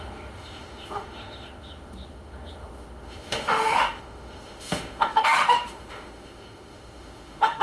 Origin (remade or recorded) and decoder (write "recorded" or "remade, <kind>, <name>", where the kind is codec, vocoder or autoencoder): remade, autoencoder, DAC-VAE